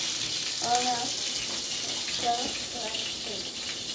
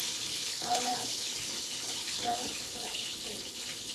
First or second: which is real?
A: first